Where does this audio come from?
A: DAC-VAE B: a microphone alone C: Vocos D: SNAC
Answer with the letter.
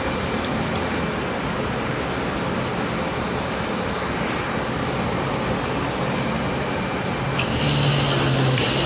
B